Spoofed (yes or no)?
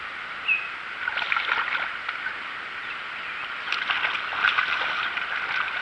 no